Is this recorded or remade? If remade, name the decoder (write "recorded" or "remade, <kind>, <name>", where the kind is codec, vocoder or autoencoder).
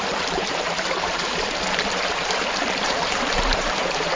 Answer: remade, vocoder, BigVGAN v2